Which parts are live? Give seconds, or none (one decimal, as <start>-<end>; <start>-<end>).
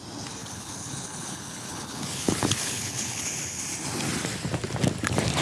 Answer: 0.0-0.4; 3.6-5.4